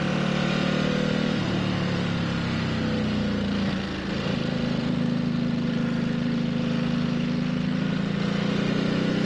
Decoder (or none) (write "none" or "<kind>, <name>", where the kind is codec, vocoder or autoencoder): none